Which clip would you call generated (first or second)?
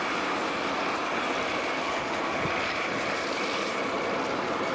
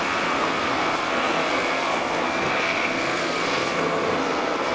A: second